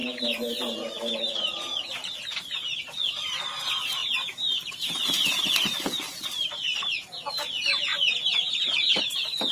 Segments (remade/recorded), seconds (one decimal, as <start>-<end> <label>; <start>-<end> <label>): 0.0-9.5 recorded